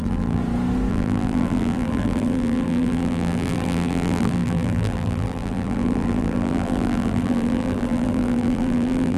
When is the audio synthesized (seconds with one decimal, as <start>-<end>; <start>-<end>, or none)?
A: 0.0-0.4; 0.9-9.2